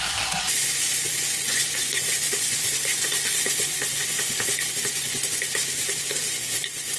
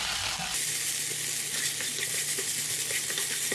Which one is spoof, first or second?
first